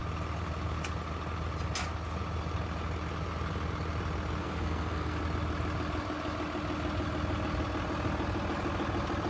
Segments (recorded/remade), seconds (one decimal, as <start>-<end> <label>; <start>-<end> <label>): 0.0-4.4 recorded; 4.4-5.2 remade; 5.2-9.3 recorded